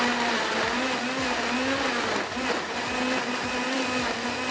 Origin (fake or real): real